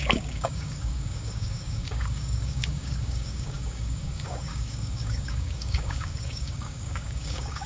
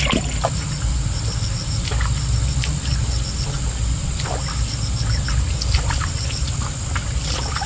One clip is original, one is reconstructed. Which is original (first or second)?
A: second